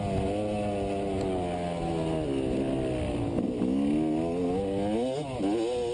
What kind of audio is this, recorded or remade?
recorded